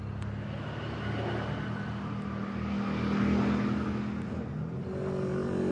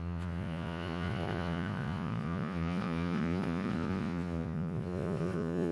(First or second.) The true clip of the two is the first